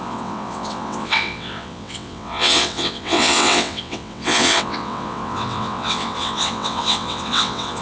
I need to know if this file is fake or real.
fake